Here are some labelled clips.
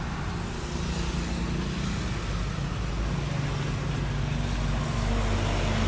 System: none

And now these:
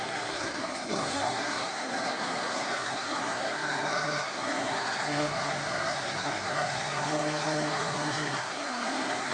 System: codec, SNAC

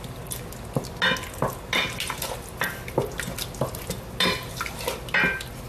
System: none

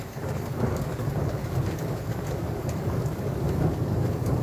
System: codec, DAC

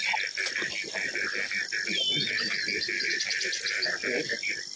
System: none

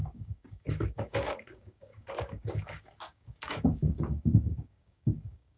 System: codec, DAC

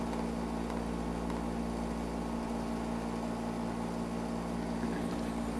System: none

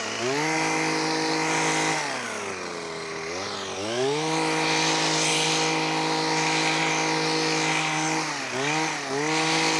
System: none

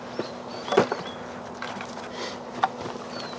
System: none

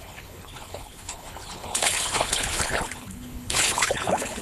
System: codec, HILCodec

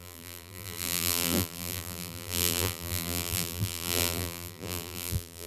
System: vocoder, BigVGAN v2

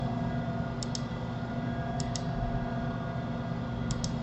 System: none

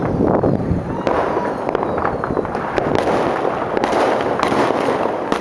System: none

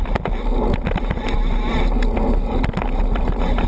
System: none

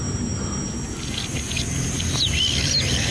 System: vocoder, BigVGAN v2